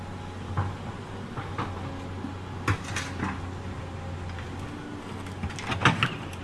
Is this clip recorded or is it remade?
recorded